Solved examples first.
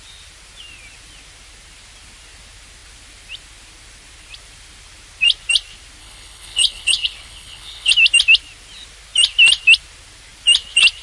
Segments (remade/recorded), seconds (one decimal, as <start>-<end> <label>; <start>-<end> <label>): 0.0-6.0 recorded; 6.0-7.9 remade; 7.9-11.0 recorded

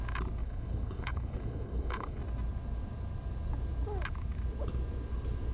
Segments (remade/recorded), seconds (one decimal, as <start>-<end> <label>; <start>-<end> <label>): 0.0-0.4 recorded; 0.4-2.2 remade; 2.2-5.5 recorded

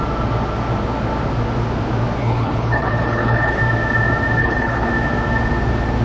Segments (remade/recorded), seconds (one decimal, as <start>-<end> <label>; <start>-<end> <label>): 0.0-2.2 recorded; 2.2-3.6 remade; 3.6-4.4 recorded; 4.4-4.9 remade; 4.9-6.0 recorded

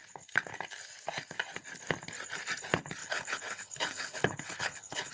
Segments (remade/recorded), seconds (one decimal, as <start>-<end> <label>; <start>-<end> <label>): 0.0-3.0 recorded; 3.0-5.1 remade